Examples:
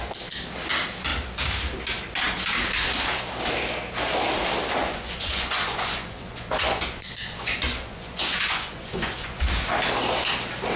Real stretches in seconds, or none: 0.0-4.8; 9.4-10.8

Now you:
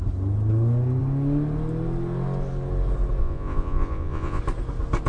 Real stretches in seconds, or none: 0.0-3.2; 4.4-5.1

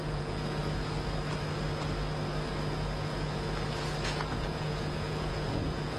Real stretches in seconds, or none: 0.6-4.0

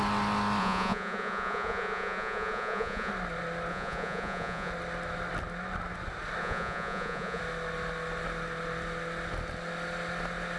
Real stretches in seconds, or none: 0.0-0.6; 3.1-3.7; 4.7-6.4; 7.4-10.6

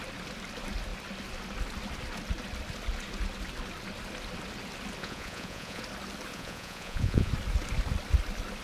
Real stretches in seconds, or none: 0.0-5.0; 5.8-6.3; 7.3-8.6

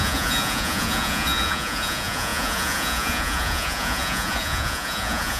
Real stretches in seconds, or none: none